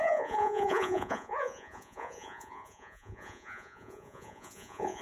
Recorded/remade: remade